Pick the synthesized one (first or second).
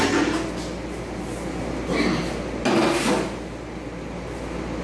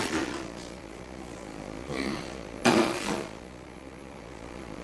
second